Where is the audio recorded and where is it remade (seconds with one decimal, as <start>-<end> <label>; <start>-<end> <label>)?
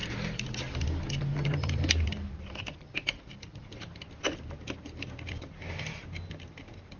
0.0-7.0 recorded